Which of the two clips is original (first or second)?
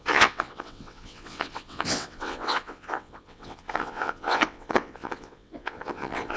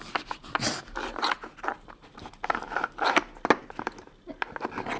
second